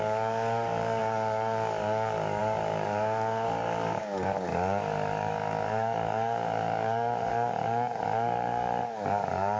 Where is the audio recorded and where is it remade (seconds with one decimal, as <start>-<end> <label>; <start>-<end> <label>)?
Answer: 0.0-9.6 remade